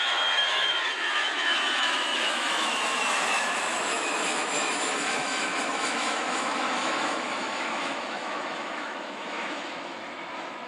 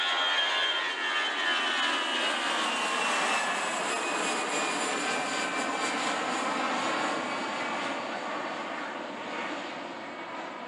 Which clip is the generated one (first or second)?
first